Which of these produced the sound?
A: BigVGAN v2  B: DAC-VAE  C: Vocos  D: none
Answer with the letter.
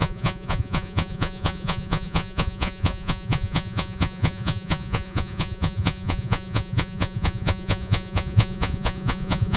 C